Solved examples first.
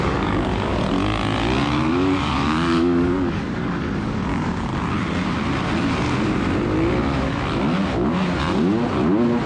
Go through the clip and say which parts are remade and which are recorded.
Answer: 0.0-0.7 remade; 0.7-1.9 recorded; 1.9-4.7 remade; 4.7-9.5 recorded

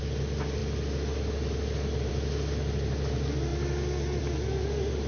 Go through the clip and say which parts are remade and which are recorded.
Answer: 0.0-5.1 recorded

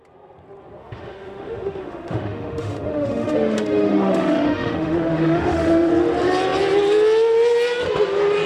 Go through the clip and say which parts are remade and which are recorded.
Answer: 0.0-0.8 recorded; 0.8-5.9 remade; 5.9-8.5 recorded